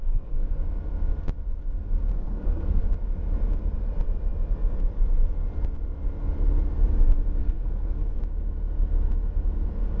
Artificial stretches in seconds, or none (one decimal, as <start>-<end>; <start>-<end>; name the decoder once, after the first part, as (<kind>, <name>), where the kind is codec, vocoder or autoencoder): 0.0-0.6 (codec, SNAC); 2.1-2.8; 7.4-8.2

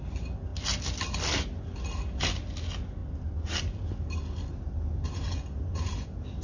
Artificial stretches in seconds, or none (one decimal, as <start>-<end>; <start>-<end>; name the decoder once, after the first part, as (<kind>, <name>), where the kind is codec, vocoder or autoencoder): none

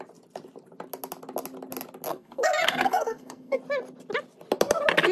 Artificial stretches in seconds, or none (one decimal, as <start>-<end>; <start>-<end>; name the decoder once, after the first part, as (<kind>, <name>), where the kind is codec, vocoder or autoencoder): 2.1-3.6 (codec, SNAC)

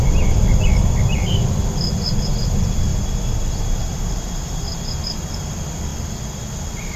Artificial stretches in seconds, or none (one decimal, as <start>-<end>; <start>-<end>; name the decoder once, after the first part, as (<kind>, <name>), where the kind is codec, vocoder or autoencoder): none

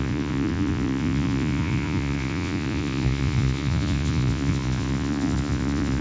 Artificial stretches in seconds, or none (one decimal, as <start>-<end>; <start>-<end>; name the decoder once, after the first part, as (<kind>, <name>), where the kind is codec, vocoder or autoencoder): 0.0-6.0 (vocoder, Vocos)

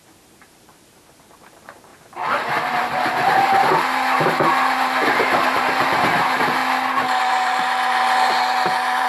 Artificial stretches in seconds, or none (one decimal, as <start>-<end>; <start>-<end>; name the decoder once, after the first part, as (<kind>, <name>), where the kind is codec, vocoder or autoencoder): 0.0-1.9 (vocoder, BigVGAN v2); 2.4-6.6; 7.2-9.1

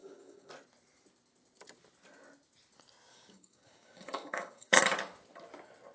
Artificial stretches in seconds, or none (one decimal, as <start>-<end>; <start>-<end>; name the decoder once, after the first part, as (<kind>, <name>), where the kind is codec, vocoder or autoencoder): 0.0-0.5 (codec, DAC); 3.1-4.8

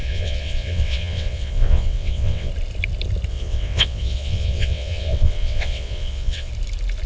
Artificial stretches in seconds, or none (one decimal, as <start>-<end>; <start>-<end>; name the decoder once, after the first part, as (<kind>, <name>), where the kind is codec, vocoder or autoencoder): 0.0-2.5 (vocoder, WaveNeXt); 3.3-6.5